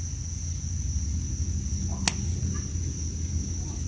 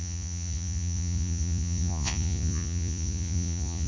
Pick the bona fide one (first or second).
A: first